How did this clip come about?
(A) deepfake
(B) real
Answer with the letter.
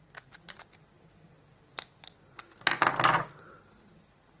B